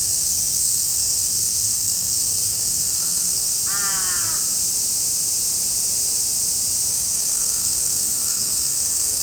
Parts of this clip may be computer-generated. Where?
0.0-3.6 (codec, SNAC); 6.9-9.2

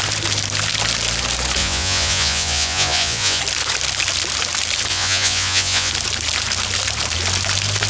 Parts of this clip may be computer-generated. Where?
1.6-3.4 (vocoder, Vocos); 4.9-5.9

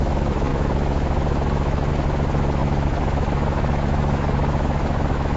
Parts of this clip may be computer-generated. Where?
0.0-5.4 (autoencoder, DAC-VAE)

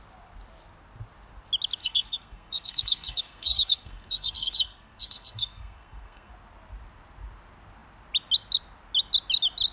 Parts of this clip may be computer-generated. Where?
1.8-6.3 (codec, SNAC)

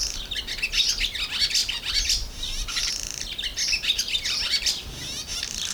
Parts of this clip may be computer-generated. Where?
1.6-2.9 (vocoder, BigVGAN v2); 3.5-5.7

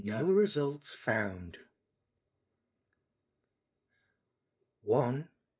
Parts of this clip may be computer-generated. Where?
0.0-1.1 (codec, SNAC); 1.6-5.0